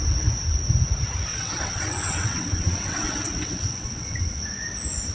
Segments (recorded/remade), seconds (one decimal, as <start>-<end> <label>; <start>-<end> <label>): 0.0-1.3 recorded; 1.3-4.4 remade; 4.4-5.1 recorded